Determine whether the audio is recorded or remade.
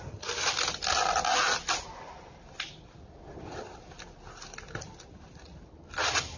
recorded